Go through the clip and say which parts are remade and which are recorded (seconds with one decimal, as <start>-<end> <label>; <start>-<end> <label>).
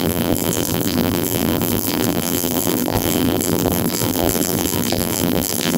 0.0-5.8 remade